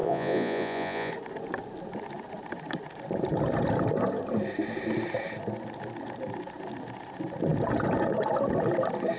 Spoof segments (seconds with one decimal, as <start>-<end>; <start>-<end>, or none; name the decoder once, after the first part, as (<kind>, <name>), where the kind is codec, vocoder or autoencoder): 0.0-1.1 (vocoder, Vocos)